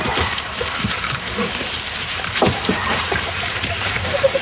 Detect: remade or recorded remade